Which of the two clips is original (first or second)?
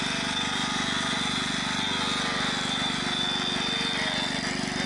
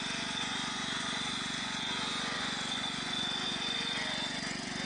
first